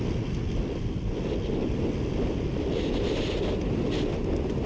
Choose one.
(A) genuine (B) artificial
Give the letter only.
A